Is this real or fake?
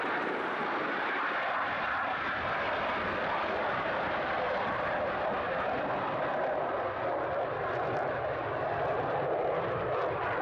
real